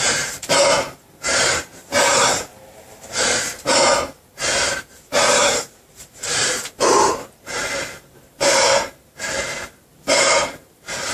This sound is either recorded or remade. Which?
remade